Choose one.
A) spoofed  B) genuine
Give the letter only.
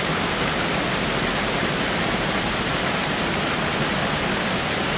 B